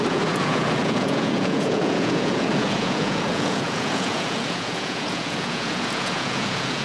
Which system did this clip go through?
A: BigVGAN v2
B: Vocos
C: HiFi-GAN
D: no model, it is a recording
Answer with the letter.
B